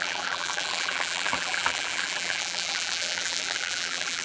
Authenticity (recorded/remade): remade